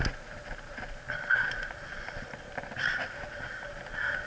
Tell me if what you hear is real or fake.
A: real